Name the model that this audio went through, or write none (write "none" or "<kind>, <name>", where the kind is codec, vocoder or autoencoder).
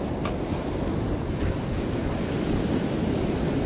none